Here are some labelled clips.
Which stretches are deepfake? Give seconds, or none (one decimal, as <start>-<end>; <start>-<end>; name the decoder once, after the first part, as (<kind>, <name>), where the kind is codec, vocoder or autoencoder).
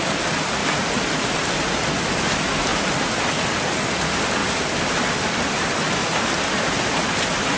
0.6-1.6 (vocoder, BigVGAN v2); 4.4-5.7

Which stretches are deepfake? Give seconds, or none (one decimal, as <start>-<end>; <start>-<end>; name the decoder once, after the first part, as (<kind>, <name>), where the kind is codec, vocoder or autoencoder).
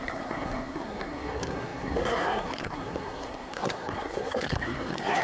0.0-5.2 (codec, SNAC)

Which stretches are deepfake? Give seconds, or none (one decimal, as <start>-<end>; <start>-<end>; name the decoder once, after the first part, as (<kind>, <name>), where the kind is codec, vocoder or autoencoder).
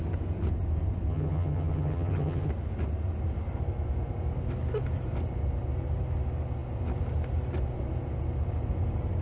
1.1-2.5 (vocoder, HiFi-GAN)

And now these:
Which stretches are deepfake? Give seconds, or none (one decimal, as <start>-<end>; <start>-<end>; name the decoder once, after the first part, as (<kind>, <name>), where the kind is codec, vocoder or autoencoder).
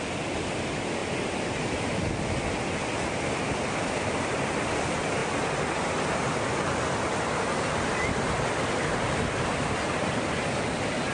none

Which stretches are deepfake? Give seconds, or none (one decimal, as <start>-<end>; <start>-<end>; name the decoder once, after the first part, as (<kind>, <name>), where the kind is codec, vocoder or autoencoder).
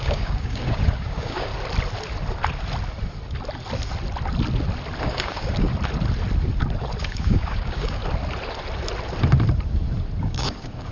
0.0-1.5 (codec, DAC); 5.0-5.7; 7.0-8.0; 10.2-10.9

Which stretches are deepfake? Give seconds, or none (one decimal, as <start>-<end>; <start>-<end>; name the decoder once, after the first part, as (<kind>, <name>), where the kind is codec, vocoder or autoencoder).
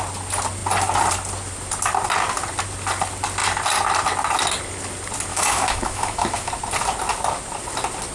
5.3-6.5 (autoencoder, DAC-VAE)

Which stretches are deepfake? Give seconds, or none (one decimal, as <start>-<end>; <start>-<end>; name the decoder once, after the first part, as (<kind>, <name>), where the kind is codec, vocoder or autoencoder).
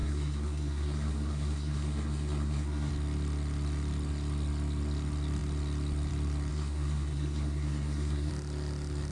0.0-2.9 (codec, SNAC); 6.5-8.3